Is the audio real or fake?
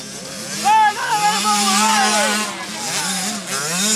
real